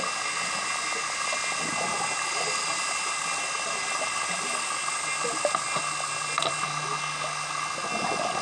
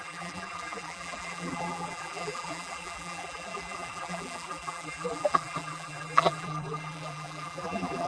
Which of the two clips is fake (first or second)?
second